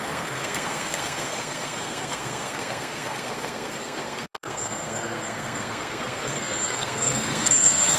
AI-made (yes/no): yes